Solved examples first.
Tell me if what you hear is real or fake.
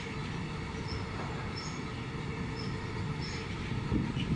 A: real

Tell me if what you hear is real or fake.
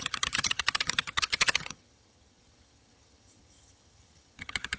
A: fake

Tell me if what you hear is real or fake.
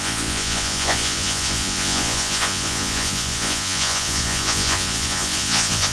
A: fake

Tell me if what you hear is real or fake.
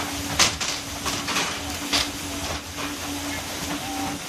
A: real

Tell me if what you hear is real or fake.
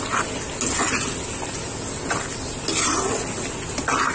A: real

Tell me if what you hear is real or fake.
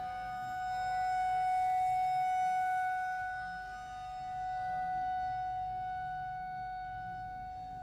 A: fake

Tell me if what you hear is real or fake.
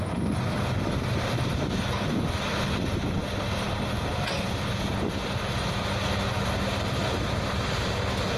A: real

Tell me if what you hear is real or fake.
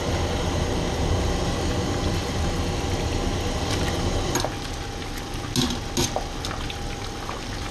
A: real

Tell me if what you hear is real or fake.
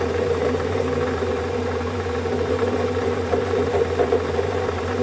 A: fake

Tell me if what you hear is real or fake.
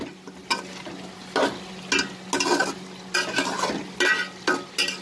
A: real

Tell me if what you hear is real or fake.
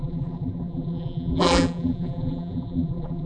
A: fake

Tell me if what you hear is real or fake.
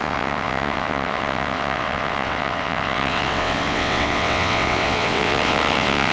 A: fake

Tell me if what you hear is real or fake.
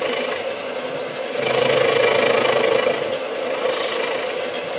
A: real